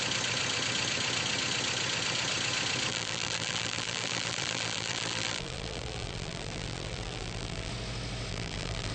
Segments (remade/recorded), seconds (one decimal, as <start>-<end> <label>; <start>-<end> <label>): 0.0-2.9 recorded; 2.9-7.7 remade; 7.7-8.3 recorded; 8.3-8.9 remade